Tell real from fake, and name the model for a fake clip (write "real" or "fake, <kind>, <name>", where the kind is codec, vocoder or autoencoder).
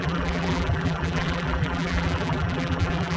fake, vocoder, BigVGAN v2